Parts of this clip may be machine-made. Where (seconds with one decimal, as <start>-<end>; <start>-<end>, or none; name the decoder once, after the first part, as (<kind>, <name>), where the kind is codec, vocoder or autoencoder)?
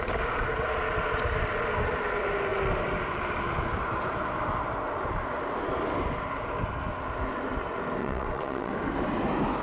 8.0-8.7 (vocoder, WaveNeXt)